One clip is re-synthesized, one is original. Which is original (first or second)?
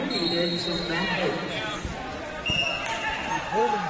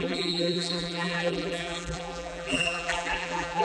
first